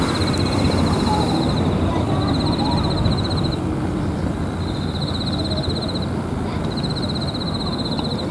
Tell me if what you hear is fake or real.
real